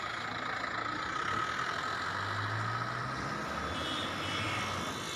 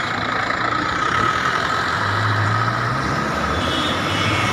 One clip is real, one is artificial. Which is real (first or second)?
first